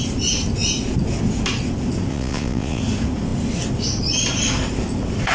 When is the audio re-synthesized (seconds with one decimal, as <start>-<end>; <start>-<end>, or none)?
2.1-2.8